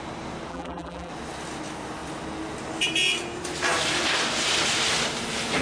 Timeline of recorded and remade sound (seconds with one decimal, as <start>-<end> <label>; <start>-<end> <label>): 0.0-0.5 recorded; 0.5-1.1 remade; 1.1-5.6 recorded